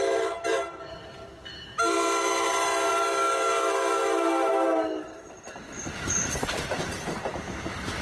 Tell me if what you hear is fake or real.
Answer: fake